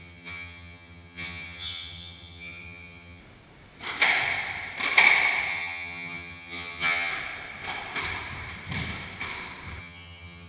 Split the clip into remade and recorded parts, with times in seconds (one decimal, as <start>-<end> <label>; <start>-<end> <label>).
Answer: 0.0-3.2 remade; 3.2-5.5 recorded; 5.5-7.1 remade; 7.1-9.8 recorded; 9.8-10.5 remade